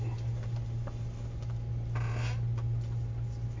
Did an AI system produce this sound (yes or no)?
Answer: no